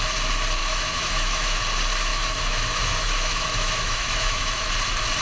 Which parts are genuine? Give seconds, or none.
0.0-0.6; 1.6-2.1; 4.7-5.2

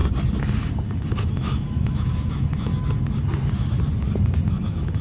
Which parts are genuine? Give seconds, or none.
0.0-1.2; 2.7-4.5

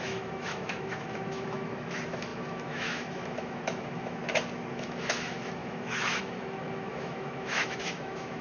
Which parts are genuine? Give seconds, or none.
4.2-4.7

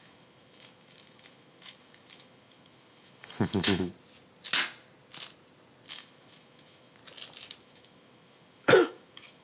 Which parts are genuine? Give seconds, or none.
3.9-5.9; 7.0-7.6

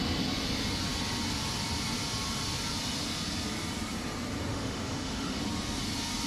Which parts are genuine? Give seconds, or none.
0.0-4.5; 5.4-6.3

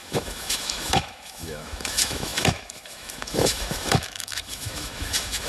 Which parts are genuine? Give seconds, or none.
none

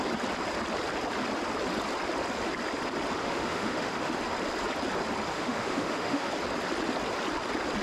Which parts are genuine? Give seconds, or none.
0.0-3.2; 4.2-5.3; 6.3-7.8